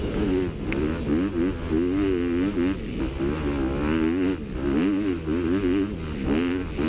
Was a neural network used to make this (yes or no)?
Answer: no